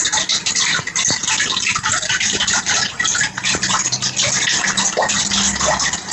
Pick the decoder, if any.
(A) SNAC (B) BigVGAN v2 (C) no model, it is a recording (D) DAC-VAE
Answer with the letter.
C